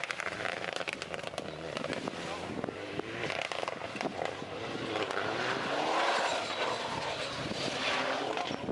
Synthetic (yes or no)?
no